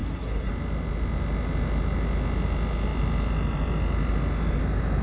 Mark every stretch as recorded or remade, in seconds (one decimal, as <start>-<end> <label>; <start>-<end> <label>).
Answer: 0.0-0.5 remade; 0.5-5.0 recorded